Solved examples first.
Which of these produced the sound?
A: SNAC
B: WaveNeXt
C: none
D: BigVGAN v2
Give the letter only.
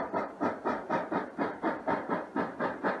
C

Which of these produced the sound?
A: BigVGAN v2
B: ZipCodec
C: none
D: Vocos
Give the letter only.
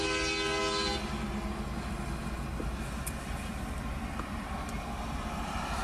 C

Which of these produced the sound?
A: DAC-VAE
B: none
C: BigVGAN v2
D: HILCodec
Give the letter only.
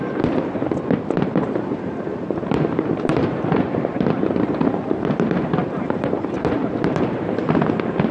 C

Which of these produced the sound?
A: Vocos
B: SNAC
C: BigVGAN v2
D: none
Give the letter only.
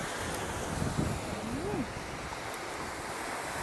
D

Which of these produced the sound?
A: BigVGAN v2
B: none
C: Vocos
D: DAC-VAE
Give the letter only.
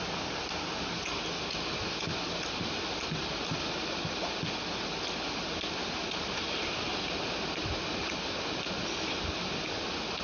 B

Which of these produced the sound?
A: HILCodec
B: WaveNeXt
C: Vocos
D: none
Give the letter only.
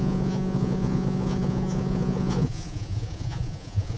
C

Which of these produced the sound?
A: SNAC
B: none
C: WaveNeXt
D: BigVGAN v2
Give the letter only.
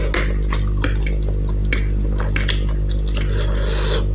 B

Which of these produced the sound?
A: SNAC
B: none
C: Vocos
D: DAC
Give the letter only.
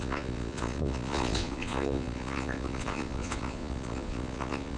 C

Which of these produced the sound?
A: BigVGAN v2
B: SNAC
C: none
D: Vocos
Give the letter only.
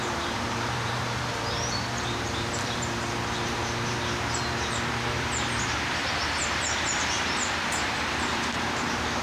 A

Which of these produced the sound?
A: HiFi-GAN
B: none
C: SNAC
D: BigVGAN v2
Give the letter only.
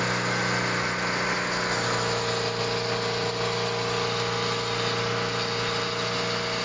B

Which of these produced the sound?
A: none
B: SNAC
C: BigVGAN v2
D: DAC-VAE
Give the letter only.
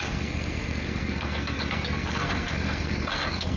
B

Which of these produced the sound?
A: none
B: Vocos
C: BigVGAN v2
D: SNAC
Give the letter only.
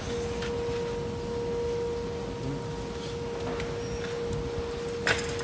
A